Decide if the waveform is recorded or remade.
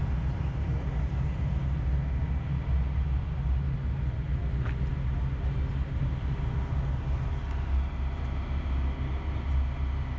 recorded